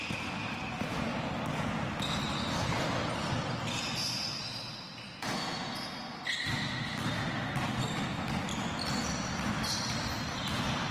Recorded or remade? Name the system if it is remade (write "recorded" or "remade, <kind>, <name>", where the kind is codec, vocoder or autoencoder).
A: recorded